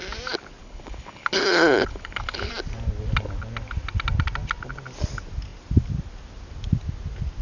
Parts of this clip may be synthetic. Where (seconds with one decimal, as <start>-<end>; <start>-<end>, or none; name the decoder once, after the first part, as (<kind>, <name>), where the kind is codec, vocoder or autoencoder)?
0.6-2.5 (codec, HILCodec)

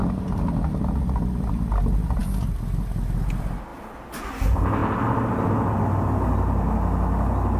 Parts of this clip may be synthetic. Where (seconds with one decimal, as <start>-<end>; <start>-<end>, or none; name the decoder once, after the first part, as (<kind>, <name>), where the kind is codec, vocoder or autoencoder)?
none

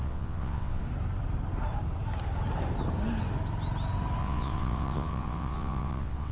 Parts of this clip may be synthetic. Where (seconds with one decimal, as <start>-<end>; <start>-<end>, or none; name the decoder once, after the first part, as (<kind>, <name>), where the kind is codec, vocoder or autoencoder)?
0.0-0.8 (vocoder, WaveNeXt); 4.2-6.3

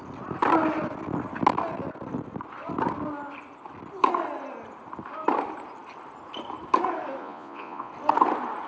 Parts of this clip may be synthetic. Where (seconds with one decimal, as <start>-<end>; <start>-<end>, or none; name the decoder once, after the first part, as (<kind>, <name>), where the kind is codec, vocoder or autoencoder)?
7.2-7.9 (vocoder, Vocos)

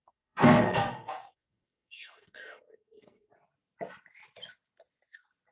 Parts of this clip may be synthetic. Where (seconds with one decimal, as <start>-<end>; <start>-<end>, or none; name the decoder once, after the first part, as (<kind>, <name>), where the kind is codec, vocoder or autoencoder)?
0.0-3.3 (codec, SNAC)

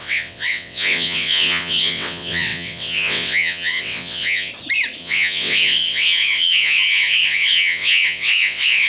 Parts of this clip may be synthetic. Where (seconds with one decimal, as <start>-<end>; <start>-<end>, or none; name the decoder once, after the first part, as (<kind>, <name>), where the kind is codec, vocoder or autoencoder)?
0.0-4.5 (vocoder, WaveNeXt); 5.0-8.9

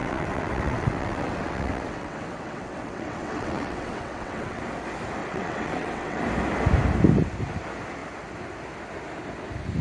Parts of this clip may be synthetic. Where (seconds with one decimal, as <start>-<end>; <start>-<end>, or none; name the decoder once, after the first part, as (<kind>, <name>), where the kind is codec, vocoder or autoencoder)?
0.0-4.6 (vocoder, WaveNeXt); 5.2-6.2